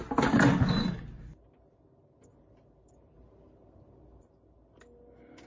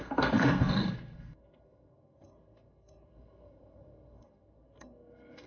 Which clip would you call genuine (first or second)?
first